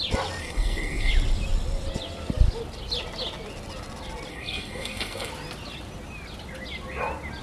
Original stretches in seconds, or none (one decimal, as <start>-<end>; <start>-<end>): 0.0-0.4; 1.1-4.3; 5.3-7.4